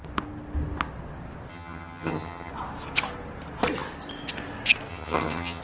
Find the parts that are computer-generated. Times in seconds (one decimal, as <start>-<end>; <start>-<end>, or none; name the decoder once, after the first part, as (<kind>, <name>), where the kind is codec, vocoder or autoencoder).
1.5-2.5 (vocoder, HiFi-GAN); 4.9-5.6